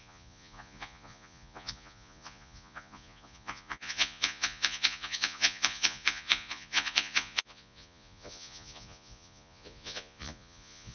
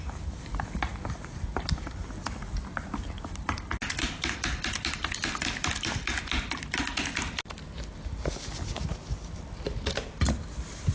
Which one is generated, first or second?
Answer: first